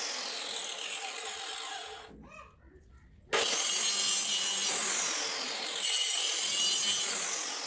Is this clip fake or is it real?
real